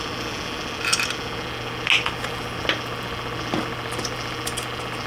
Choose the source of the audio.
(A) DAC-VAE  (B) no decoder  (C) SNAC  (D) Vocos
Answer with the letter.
B